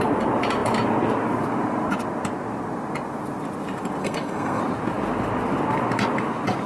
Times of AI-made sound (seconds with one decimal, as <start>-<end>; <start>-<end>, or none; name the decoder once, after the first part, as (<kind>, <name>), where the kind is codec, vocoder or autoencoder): 4.0-4.6 (codec, SNAC)